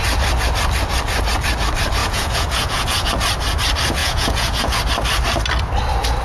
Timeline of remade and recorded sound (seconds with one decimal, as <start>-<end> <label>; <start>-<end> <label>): 0.0-2.0 recorded; 2.0-3.1 remade; 3.1-4.0 recorded; 4.0-4.8 remade; 4.8-6.2 recorded